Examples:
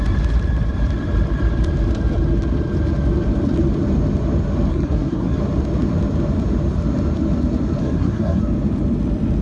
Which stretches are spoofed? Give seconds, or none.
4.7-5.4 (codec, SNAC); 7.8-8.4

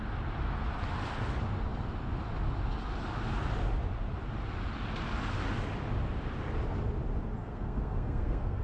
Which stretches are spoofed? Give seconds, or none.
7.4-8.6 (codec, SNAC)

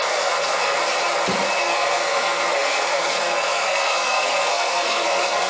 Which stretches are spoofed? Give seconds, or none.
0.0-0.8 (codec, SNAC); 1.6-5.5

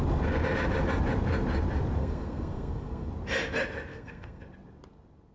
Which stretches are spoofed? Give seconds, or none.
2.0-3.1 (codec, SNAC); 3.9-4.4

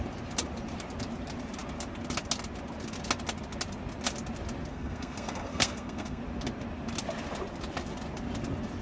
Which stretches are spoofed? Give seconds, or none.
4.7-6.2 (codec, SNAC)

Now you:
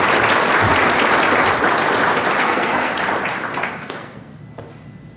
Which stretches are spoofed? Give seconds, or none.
2.4-2.9 (codec, SNAC); 3.5-4.4

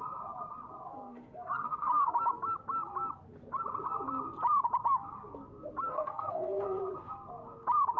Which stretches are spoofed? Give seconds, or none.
0.9-2.1 (codec, SNAC); 5.9-6.8

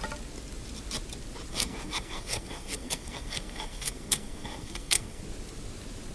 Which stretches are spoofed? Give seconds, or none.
1.5-5.2 (codec, SNAC)